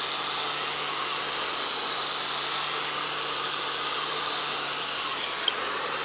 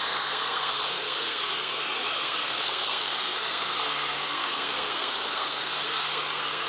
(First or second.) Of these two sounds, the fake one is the second